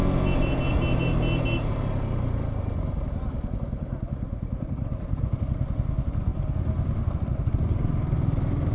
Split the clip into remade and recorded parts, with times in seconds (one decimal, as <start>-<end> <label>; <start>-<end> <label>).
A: 0.0-8.7 recorded